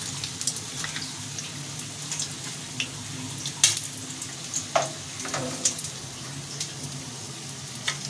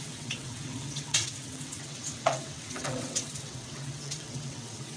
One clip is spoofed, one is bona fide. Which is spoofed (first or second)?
second